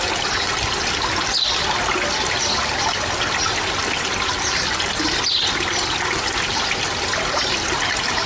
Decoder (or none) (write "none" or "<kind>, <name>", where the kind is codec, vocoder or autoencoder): none